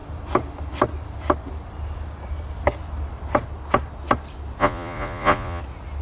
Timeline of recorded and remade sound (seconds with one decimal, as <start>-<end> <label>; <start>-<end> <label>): 0.0-4.6 recorded; 4.6-5.6 remade; 5.6-6.0 recorded